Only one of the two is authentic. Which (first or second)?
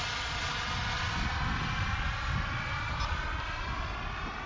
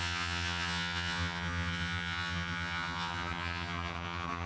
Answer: first